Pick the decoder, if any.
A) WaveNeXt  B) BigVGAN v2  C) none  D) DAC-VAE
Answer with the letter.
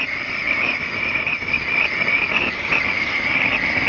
C